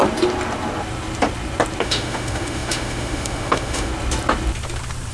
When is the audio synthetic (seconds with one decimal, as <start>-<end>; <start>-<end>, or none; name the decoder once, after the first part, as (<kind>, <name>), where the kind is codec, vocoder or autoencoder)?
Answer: 1.8-3.9 (autoencoder, DAC-VAE)